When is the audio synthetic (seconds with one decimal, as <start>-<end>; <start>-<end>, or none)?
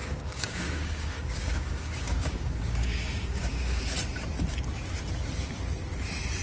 0.0-3.8